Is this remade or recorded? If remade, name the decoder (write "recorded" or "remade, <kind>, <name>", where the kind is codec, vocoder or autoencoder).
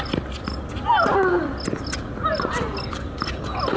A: recorded